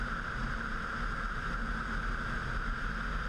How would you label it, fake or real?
real